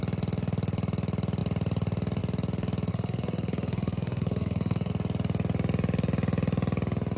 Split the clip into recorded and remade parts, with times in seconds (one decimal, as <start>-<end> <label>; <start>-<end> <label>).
0.0-2.9 recorded; 2.9-4.9 remade; 4.9-7.2 recorded